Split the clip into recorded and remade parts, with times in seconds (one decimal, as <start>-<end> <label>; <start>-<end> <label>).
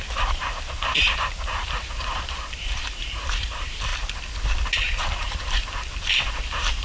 0.0-3.9 remade; 3.9-5.0 recorded; 5.0-6.8 remade